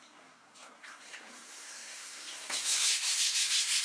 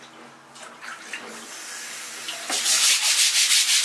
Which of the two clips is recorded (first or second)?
second